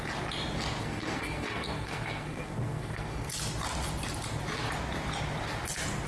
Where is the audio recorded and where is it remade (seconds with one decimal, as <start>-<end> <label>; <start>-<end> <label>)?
0.0-0.8 recorded; 0.8-3.3 remade; 3.3-6.1 recorded